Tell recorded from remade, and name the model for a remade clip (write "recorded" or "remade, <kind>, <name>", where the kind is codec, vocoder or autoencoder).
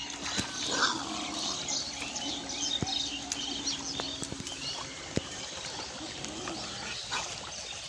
recorded